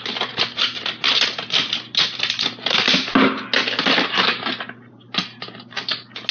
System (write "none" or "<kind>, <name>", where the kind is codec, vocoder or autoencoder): none